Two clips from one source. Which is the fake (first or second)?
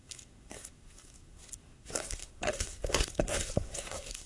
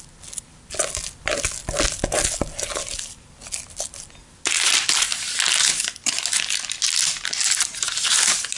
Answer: first